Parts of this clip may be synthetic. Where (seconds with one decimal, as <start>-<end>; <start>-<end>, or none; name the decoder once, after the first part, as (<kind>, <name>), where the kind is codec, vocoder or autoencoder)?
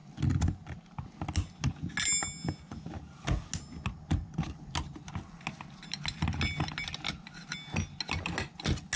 none